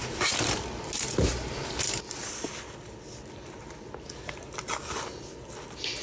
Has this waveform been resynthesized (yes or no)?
no